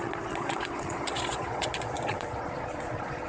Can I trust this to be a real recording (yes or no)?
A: no